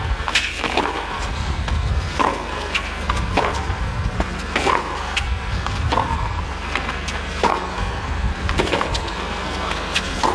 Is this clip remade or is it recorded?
remade